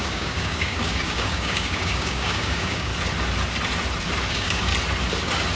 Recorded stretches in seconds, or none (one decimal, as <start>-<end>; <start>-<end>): 2.9-4.3; 4.7-5.6